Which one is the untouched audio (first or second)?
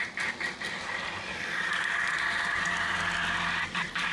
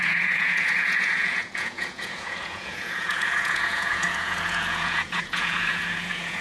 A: first